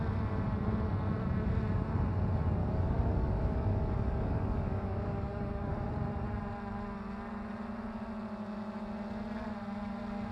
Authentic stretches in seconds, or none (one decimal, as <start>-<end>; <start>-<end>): 0.0-2.6; 5.9-10.3